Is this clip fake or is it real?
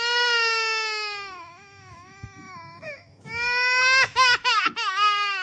fake